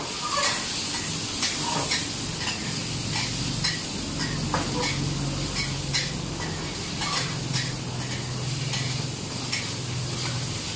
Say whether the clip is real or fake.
real